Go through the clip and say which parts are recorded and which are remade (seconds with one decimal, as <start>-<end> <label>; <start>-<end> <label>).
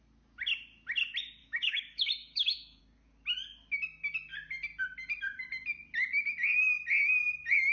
0.0-1.4 recorded; 1.4-2.8 remade; 2.8-7.7 recorded